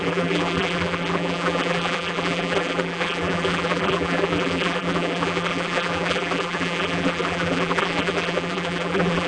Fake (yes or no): yes